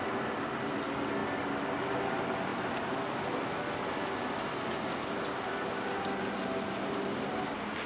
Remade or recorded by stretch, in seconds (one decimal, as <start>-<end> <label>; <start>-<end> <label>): 0.0-7.9 recorded